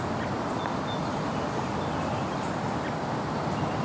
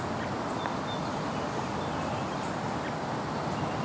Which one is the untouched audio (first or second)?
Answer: second